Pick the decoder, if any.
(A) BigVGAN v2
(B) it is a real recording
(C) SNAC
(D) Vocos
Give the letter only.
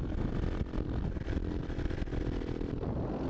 A